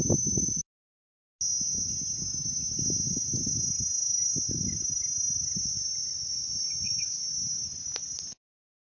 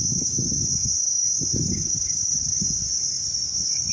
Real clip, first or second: first